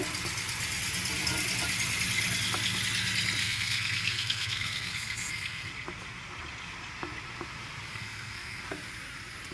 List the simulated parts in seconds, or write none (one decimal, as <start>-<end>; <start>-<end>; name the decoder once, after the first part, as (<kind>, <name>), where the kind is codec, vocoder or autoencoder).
3.4-5.7 (codec, SNAC); 7.9-8.6